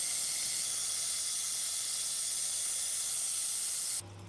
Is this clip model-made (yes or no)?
no